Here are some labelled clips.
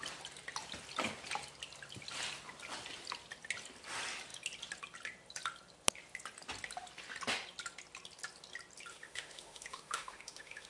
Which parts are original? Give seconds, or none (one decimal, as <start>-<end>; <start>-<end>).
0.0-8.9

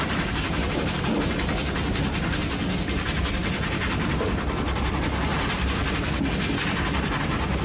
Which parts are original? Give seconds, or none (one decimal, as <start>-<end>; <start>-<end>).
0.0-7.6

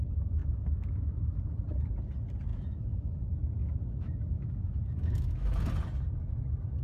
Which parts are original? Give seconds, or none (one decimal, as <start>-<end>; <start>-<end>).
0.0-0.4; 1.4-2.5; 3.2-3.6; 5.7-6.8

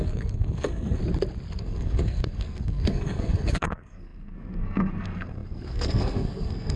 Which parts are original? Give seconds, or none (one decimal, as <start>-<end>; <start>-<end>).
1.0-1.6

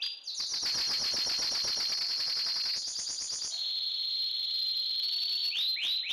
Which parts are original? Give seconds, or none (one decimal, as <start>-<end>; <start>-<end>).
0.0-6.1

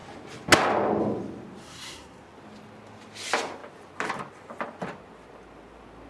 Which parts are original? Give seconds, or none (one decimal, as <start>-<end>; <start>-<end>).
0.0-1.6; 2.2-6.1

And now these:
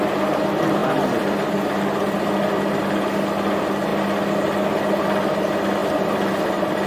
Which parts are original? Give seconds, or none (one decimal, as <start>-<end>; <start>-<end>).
0.0-5.8